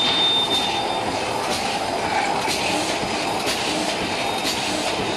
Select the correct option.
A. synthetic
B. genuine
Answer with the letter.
B